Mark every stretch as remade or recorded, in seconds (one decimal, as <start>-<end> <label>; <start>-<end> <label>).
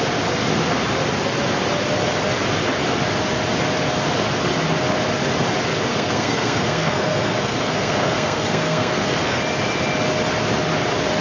0.0-5.9 recorded; 5.9-9.4 remade; 9.4-11.2 recorded